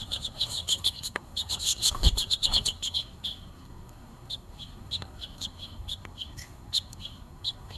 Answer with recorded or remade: remade